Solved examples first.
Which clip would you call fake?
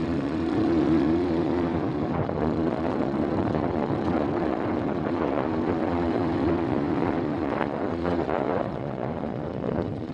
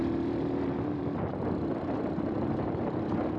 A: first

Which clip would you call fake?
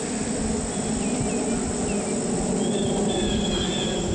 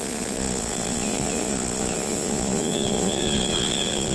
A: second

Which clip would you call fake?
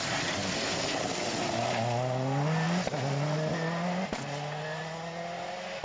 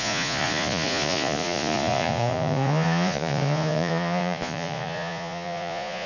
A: second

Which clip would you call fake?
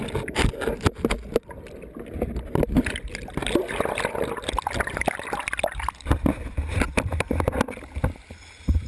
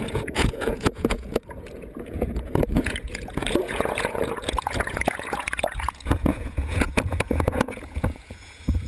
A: second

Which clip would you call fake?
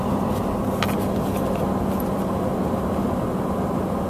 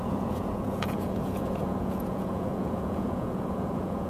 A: second